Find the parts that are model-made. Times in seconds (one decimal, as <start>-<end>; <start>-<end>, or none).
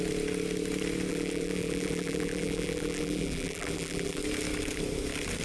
1.1-4.2